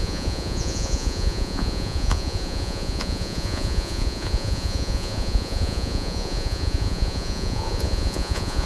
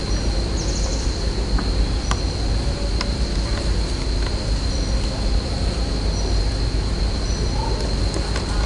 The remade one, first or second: first